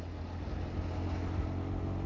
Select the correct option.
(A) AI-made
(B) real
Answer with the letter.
B